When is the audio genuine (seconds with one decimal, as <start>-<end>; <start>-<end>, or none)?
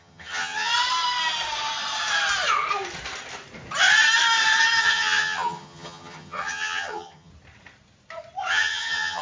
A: 0.7-4.8; 7.3-8.5